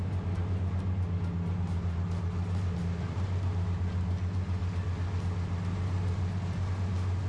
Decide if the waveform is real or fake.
real